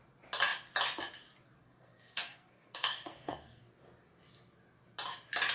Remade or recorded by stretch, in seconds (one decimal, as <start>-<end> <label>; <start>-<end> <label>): 0.0-1.6 recorded; 1.6-3.6 remade; 3.6-5.5 recorded